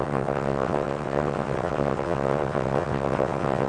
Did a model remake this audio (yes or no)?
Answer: yes